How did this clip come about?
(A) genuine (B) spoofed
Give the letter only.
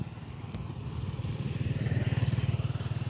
A